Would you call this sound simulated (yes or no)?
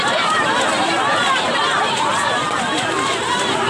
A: yes